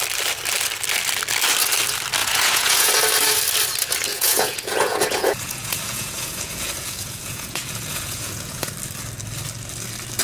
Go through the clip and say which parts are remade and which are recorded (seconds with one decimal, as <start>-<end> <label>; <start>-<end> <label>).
0.0-2.2 recorded; 2.2-2.9 remade; 2.9-4.1 recorded; 4.1-8.7 remade; 8.7-10.2 recorded